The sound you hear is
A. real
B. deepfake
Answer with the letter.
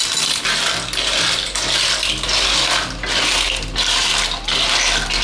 A